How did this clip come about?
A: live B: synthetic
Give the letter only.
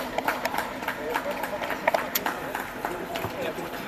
B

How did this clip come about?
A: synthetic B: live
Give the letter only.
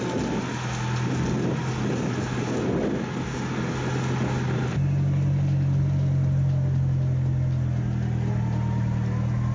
B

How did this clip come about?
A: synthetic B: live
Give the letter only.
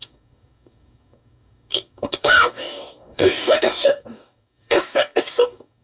A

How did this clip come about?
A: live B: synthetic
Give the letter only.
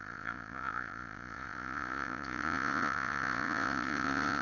B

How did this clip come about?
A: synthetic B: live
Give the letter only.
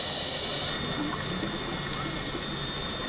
B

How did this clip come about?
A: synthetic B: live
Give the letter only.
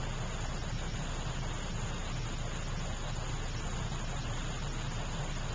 B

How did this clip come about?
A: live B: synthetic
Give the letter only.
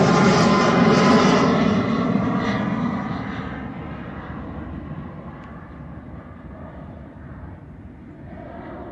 A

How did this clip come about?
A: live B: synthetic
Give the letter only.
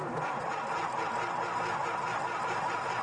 A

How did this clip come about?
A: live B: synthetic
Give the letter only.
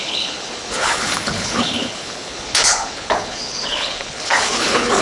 B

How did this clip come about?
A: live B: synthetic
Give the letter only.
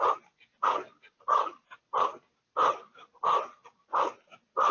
A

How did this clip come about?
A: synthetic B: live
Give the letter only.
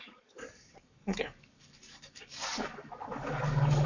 A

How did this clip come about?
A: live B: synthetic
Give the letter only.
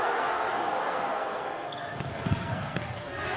B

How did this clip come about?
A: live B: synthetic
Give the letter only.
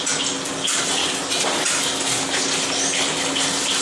A